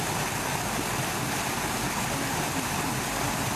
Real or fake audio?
real